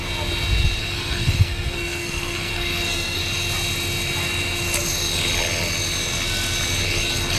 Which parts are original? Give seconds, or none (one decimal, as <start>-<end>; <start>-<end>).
0.0-0.8; 3.2-7.4